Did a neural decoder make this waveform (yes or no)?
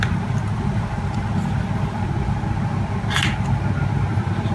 no